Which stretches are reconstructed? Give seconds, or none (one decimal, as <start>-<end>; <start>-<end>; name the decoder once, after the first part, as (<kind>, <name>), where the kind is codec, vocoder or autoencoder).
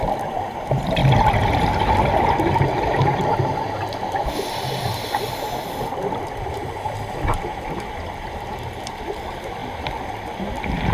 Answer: 0.0-1.0 (vocoder, BigVGAN v2); 6.2-9.6